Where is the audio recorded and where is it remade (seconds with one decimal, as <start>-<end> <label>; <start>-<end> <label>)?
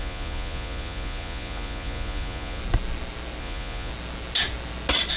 0.0-2.6 remade; 2.6-3.4 recorded; 3.4-3.9 remade; 3.9-5.2 recorded